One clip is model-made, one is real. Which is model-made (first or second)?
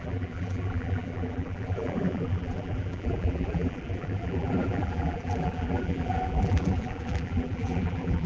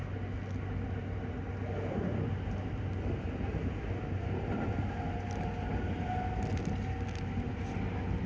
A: first